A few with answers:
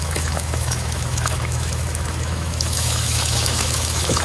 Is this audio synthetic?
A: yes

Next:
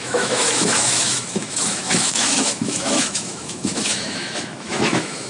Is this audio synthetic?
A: yes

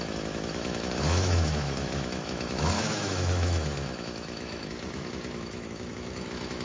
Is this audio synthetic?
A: yes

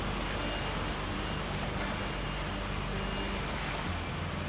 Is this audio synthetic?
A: no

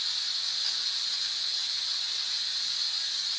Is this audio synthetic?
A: no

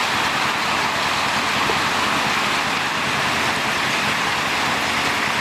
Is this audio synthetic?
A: no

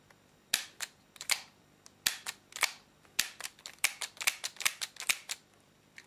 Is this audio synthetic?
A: no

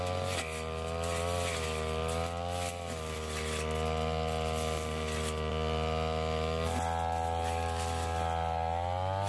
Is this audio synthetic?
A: no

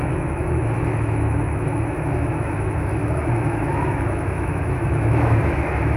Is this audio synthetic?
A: yes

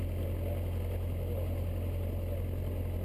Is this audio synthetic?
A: no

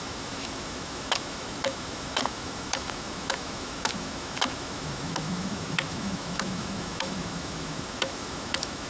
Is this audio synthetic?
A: yes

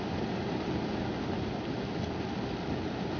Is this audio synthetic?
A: no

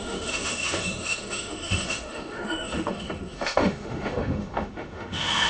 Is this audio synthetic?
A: yes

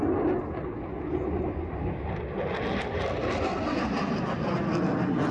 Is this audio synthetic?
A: no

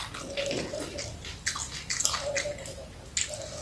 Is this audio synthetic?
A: no